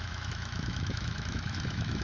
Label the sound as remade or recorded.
remade